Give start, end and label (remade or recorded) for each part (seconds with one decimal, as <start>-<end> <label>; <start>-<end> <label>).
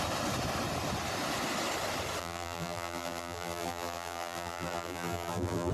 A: 0.0-2.2 recorded; 2.2-5.7 remade